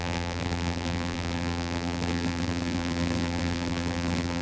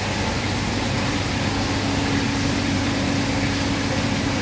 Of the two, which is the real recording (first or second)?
second